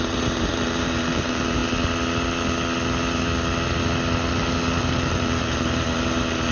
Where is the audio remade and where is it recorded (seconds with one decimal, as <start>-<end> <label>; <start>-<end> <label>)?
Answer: 0.0-1.6 remade; 1.6-4.8 recorded; 4.8-6.5 remade